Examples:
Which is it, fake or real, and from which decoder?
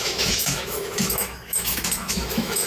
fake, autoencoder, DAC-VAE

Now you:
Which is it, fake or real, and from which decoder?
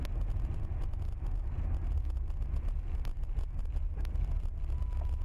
real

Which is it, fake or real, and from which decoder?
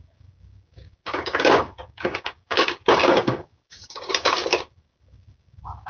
fake, codec, DAC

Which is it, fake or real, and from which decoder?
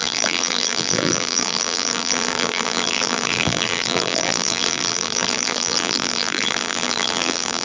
fake, vocoder, BigVGAN v2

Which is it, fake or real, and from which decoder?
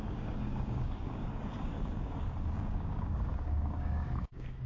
fake, codec, DAC